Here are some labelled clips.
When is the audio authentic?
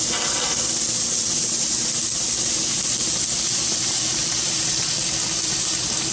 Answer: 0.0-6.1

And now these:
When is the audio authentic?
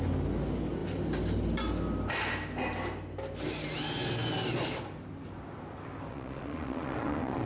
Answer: 0.0-6.1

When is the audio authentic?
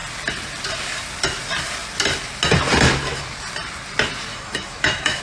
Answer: 0.0-4.3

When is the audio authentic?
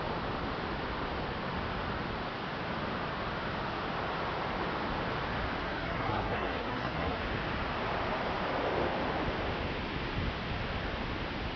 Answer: 0.0-5.6; 7.2-11.6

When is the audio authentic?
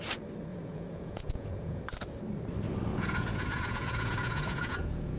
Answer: 0.0-0.5; 1.8-2.9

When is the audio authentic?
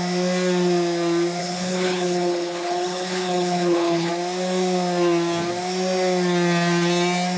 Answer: 0.0-1.4; 4.1-7.4